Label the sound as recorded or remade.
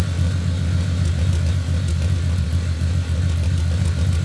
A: recorded